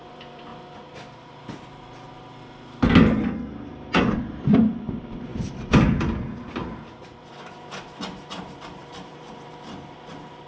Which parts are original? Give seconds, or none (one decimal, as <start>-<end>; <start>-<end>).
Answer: 0.5-4.5; 6.6-7.2